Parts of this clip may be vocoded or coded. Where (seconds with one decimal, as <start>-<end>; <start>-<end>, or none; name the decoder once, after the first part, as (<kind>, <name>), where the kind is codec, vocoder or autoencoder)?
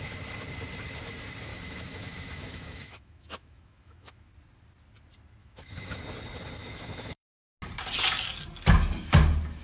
1.5-4.3 (autoencoder, DAC-VAE); 5.4-6.0; 6.6-7.5